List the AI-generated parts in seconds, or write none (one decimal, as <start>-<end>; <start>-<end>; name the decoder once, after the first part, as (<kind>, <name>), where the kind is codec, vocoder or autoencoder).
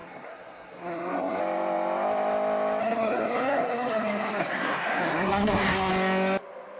0.0-1.4 (codec, SNAC); 2.8-5.9